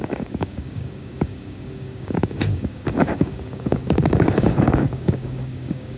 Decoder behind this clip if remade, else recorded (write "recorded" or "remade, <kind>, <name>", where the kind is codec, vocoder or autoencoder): remade, codec, DAC